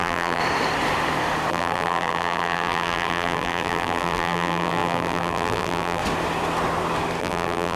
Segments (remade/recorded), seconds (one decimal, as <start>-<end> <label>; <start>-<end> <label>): 0.0-0.4 remade; 0.4-1.5 recorded; 1.5-6.0 remade; 6.0-7.2 recorded; 7.2-7.8 remade